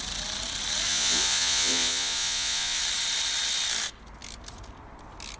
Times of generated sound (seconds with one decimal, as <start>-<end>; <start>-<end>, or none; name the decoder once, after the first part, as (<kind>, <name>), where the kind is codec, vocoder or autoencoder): 0.9-2.8 (vocoder, Vocos)